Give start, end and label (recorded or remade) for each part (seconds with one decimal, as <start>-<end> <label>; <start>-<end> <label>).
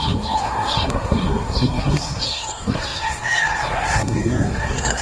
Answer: 0.0-5.0 remade